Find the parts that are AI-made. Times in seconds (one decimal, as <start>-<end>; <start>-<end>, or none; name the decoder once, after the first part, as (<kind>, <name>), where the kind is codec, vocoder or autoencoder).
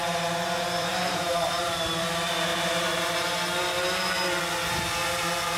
0.9-2.1 (vocoder, BigVGAN v2); 2.5-4.4